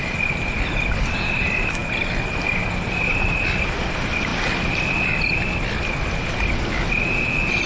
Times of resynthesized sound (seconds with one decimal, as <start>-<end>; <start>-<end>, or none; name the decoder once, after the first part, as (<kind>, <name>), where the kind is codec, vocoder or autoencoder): none